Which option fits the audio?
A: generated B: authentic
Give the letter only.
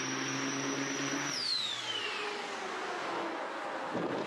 B